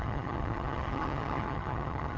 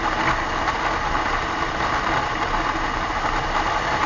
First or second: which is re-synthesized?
first